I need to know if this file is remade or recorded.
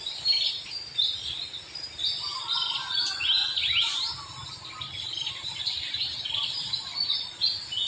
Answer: recorded